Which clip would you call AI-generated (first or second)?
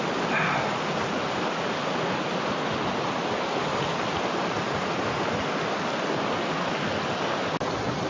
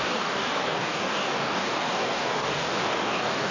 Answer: second